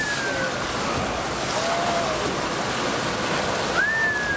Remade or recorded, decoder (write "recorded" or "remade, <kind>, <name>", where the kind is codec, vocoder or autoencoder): recorded